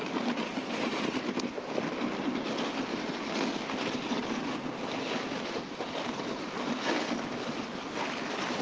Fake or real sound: real